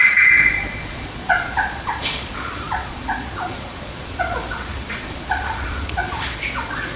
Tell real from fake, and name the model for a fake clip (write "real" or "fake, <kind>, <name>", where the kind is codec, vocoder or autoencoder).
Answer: fake, vocoder, Vocos